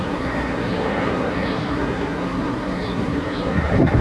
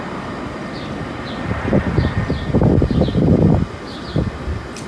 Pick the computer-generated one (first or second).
first